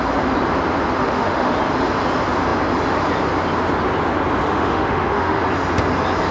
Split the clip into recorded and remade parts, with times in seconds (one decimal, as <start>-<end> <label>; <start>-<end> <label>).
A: 0.0-1.0 recorded; 1.0-1.5 remade; 1.5-4.4 recorded; 4.4-5.4 remade; 5.4-6.3 recorded